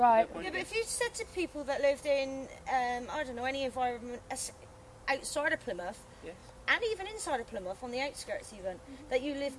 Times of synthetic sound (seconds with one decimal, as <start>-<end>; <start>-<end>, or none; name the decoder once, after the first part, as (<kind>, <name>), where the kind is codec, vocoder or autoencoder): 1.3-2.0 (autoencoder, DAC-VAE)

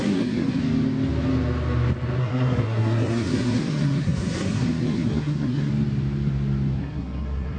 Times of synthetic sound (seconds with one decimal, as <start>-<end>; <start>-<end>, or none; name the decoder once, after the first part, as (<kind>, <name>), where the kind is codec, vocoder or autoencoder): 0.0-0.6 (codec, SNAC); 2.2-5.7; 6.8-7.6

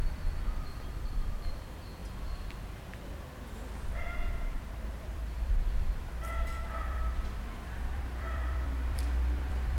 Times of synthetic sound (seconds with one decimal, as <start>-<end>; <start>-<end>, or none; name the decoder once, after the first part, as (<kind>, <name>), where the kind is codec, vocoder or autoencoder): 1.1-2.0 (vocoder, BigVGAN v2); 4.4-9.8

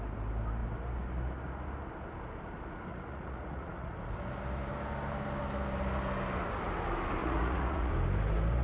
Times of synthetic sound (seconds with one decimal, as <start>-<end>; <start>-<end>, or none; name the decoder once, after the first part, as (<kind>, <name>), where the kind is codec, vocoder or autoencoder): 2.9-4.0 (vocoder, Vocos); 7.2-7.9